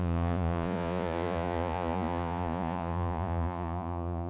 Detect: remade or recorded remade